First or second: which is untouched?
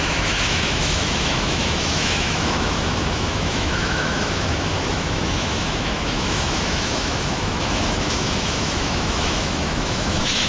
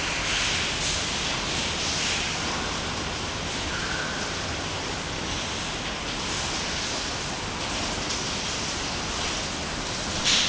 second